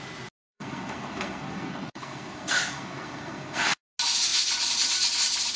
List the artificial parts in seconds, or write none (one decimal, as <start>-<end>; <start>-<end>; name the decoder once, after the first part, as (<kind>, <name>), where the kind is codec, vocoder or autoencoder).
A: 0.4-3.8 (codec, SNAC)